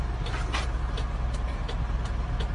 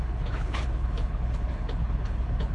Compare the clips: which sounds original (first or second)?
first